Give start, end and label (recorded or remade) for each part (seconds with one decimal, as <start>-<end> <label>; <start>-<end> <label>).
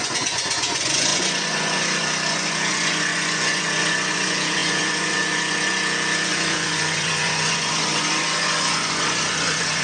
0.0-9.8 remade